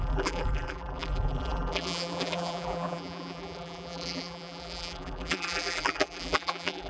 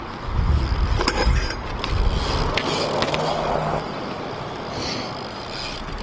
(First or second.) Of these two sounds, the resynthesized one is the first